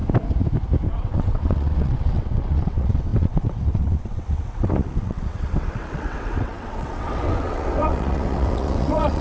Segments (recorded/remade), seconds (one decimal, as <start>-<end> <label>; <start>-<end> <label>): 0.0-0.9 recorded; 0.9-9.2 remade